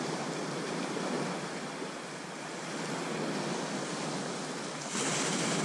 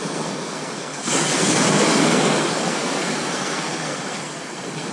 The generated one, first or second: second